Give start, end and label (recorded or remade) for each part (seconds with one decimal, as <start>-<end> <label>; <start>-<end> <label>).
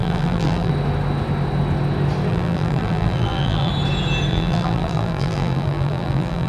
0.0-0.7 remade; 0.7-2.3 recorded; 2.3-3.7 remade; 3.7-4.3 recorded; 4.3-6.5 remade